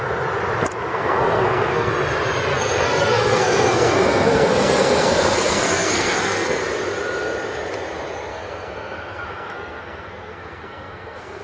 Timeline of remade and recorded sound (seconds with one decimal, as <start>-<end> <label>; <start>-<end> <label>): 0.0-0.9 recorded; 0.9-1.9 remade; 1.9-2.5 recorded; 2.5-6.6 remade; 6.6-8.3 recorded; 8.3-11.4 remade